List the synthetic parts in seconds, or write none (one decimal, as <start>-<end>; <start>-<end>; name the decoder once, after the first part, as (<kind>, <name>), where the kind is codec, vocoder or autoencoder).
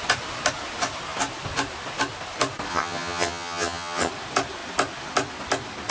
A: 2.7-4.1 (vocoder, HiFi-GAN)